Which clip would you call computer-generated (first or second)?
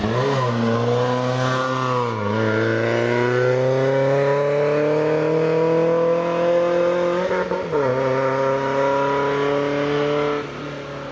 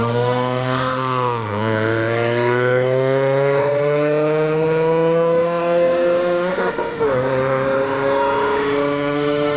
second